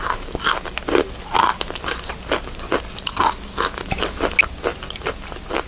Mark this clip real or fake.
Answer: real